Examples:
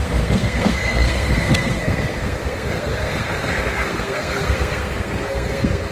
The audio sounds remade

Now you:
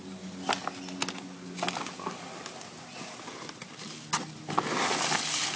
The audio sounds recorded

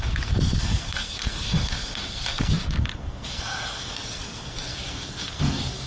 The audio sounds remade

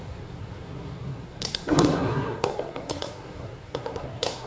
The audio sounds remade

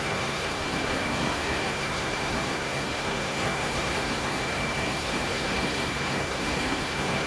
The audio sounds remade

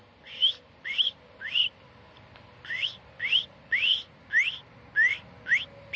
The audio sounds recorded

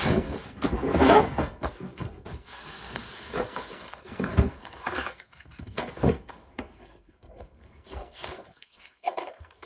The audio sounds remade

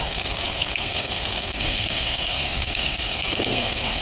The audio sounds remade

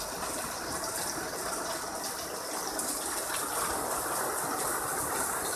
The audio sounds recorded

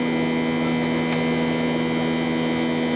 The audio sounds recorded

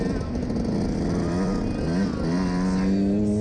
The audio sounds recorded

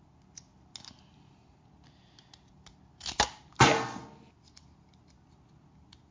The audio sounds recorded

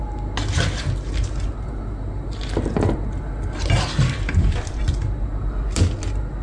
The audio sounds recorded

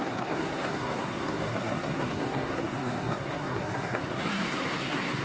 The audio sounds remade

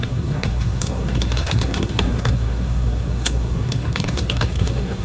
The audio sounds remade